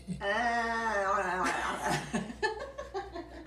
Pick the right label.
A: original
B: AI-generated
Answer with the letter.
A